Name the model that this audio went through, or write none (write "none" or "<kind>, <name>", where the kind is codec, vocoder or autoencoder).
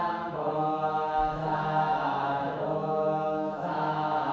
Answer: autoencoder, DAC-VAE